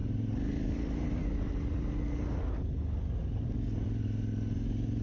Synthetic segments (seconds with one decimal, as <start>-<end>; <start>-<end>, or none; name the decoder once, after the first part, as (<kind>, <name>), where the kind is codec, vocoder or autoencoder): none